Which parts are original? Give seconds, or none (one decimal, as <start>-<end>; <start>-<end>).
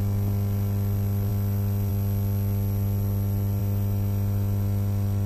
0.0-5.3